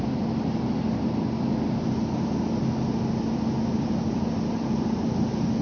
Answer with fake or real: real